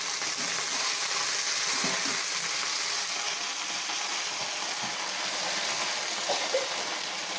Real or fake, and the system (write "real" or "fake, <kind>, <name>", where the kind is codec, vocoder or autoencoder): real